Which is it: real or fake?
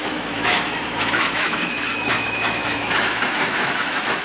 fake